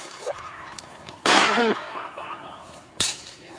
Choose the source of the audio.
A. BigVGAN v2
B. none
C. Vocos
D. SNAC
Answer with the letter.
D